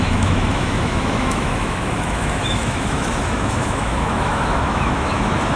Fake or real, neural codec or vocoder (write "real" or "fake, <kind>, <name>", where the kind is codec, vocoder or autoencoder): fake, autoencoder, DAC-VAE